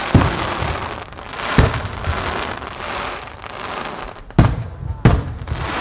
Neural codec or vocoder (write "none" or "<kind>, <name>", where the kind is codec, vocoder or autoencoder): none